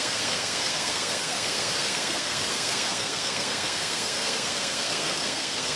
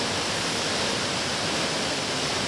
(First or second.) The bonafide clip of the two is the second